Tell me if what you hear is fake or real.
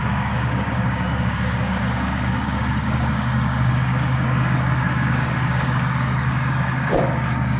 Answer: fake